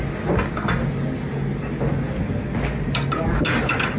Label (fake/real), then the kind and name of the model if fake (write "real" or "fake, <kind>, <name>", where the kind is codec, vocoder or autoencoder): real